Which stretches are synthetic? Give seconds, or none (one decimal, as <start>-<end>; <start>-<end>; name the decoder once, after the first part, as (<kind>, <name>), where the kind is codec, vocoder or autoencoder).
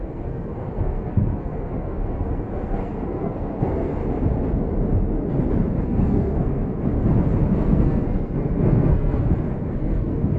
0.0-4.0 (codec, SNAC); 5.8-6.9; 7.5-10.4